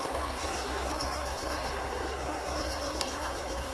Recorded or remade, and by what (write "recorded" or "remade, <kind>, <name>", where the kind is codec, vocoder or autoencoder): remade, codec, SNAC